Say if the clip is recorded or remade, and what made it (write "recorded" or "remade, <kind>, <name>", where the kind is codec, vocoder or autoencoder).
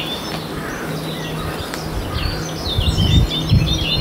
recorded